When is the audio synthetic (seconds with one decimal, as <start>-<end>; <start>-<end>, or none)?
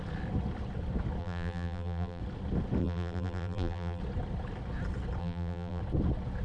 1.2-2.2; 2.8-4.0; 5.2-5.8